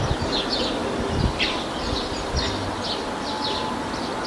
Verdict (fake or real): real